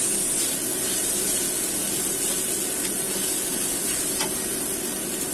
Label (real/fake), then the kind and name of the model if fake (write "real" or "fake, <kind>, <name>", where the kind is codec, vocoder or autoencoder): real